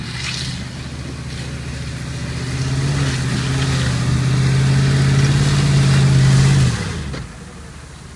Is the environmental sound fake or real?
real